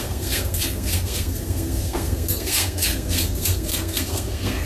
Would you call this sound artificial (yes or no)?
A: yes